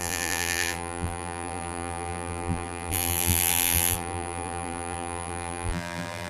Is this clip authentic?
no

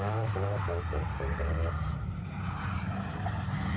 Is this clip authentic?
no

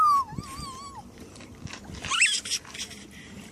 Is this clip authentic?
yes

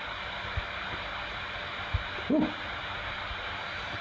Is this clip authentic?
yes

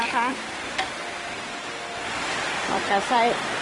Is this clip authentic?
no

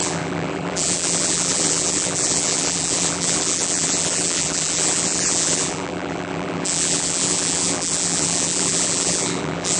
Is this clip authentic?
no